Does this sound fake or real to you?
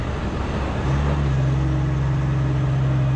real